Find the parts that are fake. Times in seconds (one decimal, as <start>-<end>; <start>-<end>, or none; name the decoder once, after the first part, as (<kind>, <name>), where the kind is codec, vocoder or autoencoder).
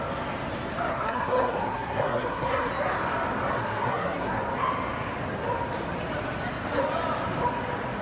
0.9-2.7 (codec, SNAC); 3.6-4.4